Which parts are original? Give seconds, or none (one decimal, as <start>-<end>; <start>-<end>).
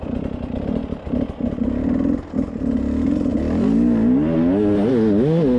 0.0-5.6